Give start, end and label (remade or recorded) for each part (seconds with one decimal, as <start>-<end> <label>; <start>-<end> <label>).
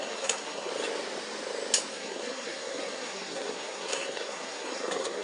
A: 0.0-0.7 remade; 0.7-1.9 recorded; 1.9-5.2 remade